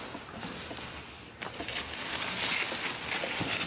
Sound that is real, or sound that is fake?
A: real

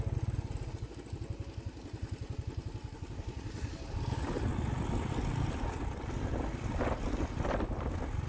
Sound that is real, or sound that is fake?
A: real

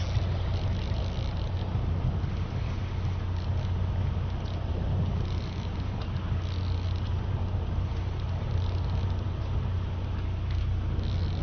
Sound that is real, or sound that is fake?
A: real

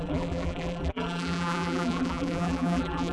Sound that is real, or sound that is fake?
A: fake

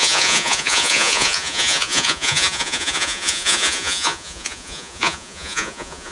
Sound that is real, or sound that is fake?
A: fake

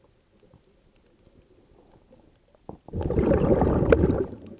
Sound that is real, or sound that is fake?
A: real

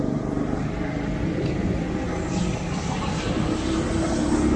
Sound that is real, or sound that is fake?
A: real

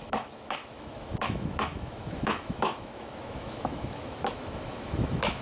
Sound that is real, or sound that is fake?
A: fake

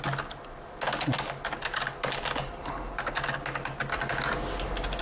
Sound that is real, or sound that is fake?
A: real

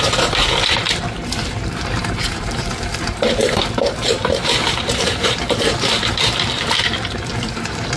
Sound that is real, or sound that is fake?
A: fake